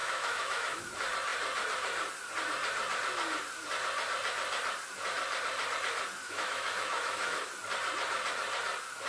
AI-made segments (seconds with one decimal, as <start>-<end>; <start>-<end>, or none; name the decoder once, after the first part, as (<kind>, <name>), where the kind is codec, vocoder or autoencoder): 0.0-0.8 (autoencoder, DAC-VAE); 6.2-7.5